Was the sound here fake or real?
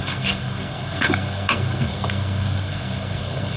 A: fake